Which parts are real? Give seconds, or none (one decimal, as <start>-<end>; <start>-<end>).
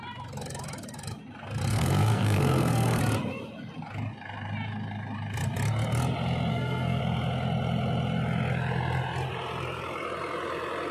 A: 0.0-1.7; 3.0-6.5; 7.0-10.9